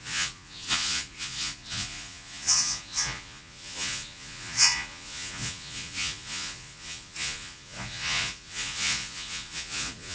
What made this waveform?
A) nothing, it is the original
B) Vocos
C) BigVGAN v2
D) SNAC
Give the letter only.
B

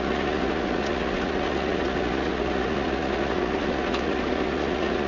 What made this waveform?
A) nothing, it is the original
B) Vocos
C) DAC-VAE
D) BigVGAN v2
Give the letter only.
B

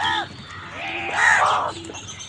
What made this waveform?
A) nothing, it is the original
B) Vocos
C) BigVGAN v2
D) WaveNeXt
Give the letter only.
A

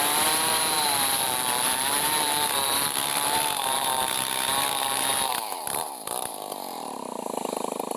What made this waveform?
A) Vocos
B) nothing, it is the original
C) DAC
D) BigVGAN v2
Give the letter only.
D